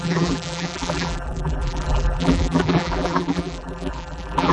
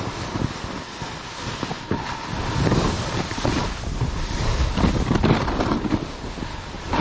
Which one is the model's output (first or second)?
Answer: first